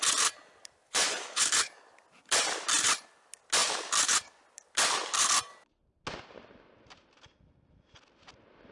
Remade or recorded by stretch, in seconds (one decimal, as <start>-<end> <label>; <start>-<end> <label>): 0.0-0.8 recorded; 0.8-1.4 remade; 1.4-8.7 recorded

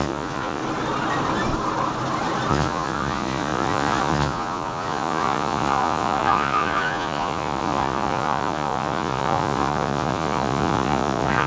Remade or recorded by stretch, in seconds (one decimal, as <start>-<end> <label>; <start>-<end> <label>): 0.0-0.6 remade; 0.6-2.5 recorded; 2.5-11.5 remade

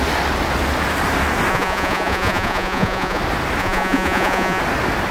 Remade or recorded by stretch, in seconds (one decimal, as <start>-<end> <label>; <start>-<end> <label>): 0.0-1.5 recorded; 1.5-3.2 remade; 3.2-3.6 recorded; 3.6-4.6 remade; 4.6-5.1 recorded

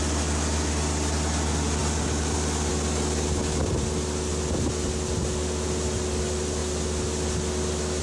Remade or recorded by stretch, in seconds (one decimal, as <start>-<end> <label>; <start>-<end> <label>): 0.0-8.0 recorded

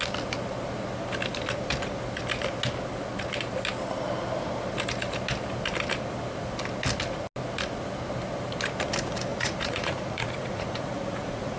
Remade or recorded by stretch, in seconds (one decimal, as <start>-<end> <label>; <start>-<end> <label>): 0.0-9.3 recorded; 9.3-11.6 remade